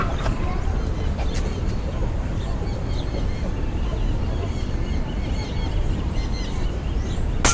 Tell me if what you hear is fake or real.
real